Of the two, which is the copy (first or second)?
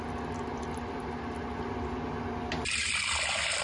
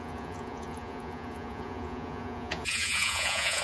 second